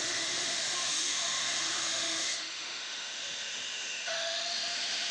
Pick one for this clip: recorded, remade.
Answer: remade